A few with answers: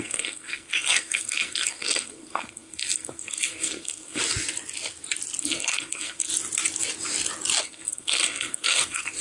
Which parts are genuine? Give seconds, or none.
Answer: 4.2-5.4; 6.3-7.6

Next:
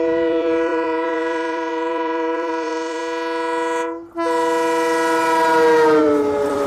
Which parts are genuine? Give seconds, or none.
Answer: 3.0-6.0

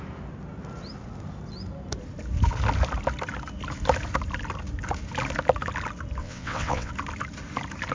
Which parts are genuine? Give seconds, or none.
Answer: 0.0-6.2; 6.9-7.9

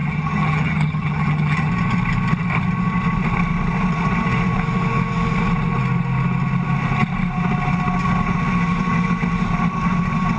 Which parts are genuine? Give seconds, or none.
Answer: 1.7-10.4

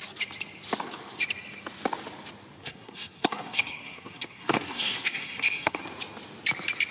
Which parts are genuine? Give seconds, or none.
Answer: 0.0-2.6; 5.8-6.9